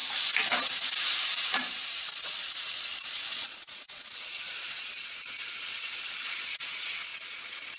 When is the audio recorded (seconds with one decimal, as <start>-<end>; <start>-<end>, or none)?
0.0-2.0; 4.3-5.0